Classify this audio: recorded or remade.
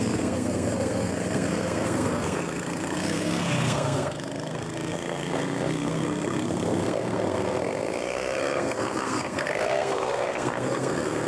remade